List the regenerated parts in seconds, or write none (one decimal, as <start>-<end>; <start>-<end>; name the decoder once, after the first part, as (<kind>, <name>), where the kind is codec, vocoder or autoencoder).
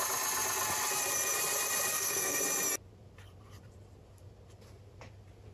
1.9-2.4 (codec, SNAC)